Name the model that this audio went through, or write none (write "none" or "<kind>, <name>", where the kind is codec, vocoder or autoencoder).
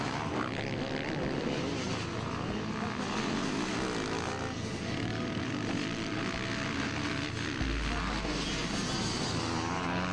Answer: none